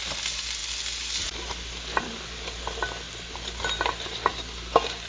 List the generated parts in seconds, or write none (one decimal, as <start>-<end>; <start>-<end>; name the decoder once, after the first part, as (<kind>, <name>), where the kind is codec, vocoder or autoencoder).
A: none